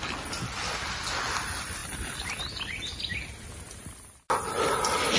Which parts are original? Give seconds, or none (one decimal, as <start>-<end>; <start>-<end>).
0.0-5.2

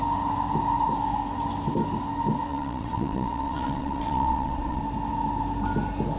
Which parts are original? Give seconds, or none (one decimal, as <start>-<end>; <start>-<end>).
0.0-2.5; 4.8-6.2

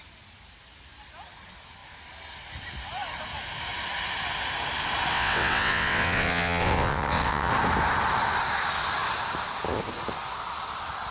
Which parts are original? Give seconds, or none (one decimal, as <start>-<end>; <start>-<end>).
0.0-5.1; 7.5-11.1

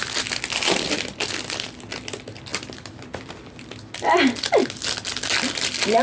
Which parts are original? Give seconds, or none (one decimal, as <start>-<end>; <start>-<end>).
0.0-6.0

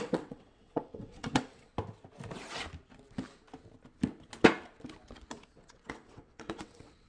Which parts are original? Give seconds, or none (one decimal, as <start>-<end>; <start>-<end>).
1.7-5.5

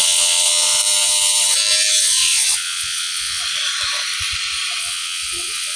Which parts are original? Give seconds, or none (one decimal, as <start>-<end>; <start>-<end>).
0.8-2.0; 3.4-4.8

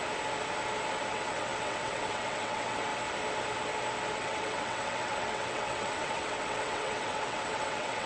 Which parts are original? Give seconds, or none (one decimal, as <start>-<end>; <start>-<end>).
0.0-1.1; 2.9-4.1

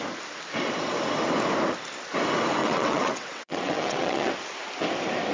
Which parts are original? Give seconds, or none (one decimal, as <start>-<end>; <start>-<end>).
0.0-2.6; 4.3-5.3